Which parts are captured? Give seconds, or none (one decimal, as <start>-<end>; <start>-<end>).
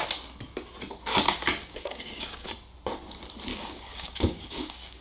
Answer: 0.0-1.6; 2.5-3.5